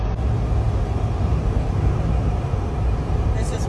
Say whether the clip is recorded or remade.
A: remade